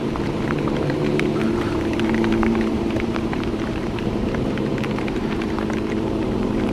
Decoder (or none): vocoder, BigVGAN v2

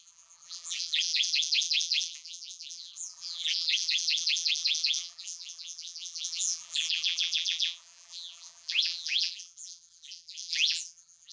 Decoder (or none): vocoder, BigVGAN v2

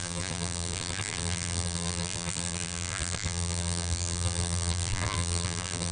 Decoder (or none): vocoder, BigVGAN v2